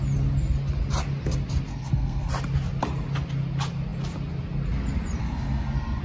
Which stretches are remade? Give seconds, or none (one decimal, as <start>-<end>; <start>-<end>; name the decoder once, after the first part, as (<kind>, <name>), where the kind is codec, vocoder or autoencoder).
1.7-2.3 (codec, SNAC); 5.2-6.0